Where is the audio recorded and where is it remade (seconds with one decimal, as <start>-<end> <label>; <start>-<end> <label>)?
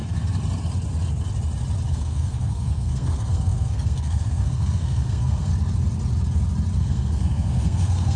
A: 0.0-1.9 recorded; 1.9-5.5 remade; 5.5-6.8 recorded; 6.8-8.2 remade